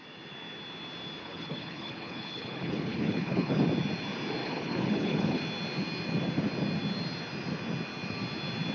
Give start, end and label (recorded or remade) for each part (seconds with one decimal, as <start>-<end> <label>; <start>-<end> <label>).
0.0-1.2 recorded; 1.2-3.6 remade; 3.6-4.4 recorded; 4.4-5.4 remade; 5.4-8.7 recorded